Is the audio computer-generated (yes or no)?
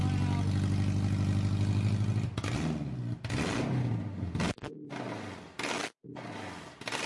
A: no